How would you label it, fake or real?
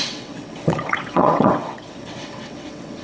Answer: fake